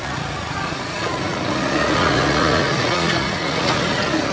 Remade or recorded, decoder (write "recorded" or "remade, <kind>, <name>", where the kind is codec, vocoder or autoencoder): remade, vocoder, Vocos